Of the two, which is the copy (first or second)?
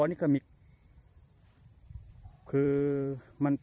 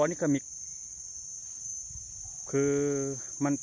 first